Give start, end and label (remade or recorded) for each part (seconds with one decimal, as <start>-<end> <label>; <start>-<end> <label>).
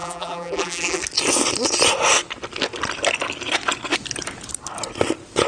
0.0-1.0 remade; 1.0-5.5 recorded